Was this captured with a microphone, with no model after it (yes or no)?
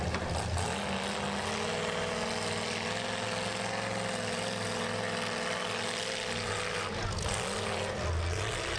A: yes